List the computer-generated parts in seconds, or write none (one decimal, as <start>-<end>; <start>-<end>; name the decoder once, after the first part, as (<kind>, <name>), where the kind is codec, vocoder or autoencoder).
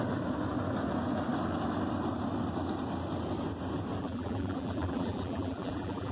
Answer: 4.0-6.1 (vocoder, BigVGAN v2)